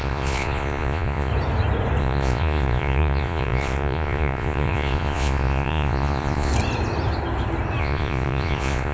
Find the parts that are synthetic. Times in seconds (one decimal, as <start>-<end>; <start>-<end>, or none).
0.0-1.3; 2.0-6.5; 7.8-8.9